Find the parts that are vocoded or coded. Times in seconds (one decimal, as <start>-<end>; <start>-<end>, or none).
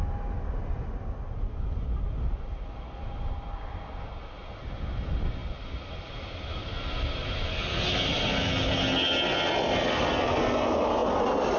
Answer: none